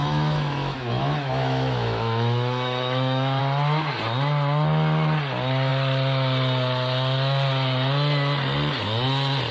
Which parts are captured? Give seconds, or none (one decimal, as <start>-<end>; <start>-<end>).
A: 3.4-9.5